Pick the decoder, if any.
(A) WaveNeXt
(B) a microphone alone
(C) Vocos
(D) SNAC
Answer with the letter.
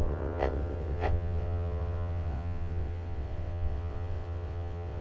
A